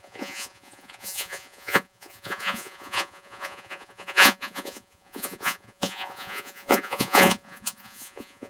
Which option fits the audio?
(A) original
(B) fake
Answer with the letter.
B